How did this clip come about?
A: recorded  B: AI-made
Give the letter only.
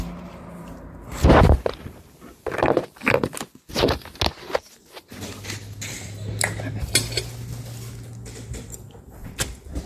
A